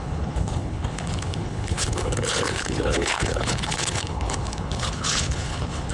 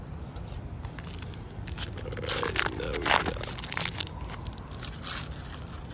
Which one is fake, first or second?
first